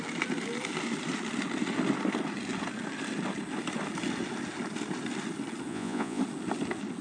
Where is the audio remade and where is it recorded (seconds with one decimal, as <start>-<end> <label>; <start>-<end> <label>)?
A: 0.0-5.7 recorded; 5.7-6.2 remade; 6.2-7.0 recorded